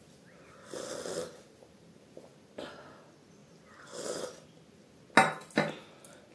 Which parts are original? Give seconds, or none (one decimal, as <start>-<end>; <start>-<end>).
0.0-6.3